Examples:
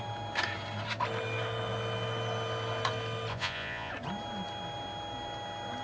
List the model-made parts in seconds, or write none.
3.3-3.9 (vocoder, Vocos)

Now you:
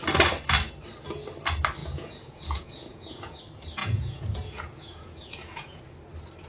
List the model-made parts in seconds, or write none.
1.8-3.4 (vocoder, Vocos); 3.8-5.8

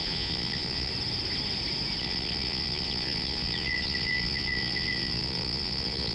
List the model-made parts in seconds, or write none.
0.0-0.9 (vocoder, Vocos); 2.0-6.1

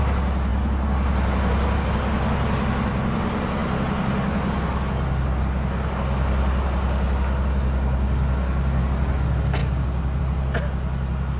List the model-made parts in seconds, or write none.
none